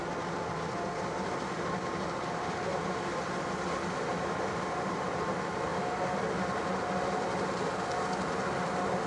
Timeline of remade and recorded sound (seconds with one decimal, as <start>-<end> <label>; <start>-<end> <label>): 0.0-9.1 recorded